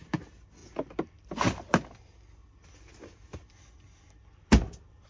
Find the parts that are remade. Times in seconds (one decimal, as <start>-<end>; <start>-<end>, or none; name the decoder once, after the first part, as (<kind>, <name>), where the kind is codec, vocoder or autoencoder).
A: none